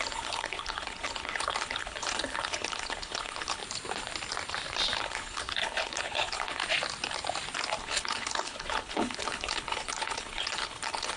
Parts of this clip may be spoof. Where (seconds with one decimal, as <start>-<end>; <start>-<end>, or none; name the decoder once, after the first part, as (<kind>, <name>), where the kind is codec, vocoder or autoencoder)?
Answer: 0.0-3.6 (codec, HILCodec); 5.0-6.6; 7.8-11.2

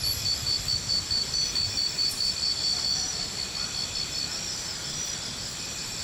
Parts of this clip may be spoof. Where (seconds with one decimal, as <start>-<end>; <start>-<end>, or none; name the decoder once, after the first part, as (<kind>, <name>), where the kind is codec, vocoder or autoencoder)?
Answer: none

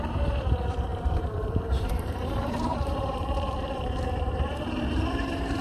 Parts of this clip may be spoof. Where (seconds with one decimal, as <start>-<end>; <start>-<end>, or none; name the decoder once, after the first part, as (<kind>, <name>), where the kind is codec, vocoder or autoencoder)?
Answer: 0.0-5.6 (vocoder, BigVGAN v2)